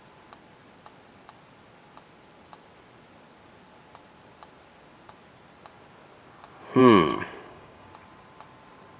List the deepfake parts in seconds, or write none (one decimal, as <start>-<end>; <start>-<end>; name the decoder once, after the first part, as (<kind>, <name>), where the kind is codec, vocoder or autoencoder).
6.8-7.9 (codec, DAC)